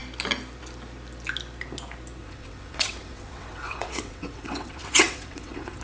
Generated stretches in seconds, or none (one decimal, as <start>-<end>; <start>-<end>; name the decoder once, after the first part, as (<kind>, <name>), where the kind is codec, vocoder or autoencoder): 2.2-5.8 (vocoder, WaveNeXt)